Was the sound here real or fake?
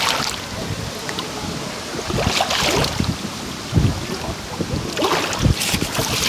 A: real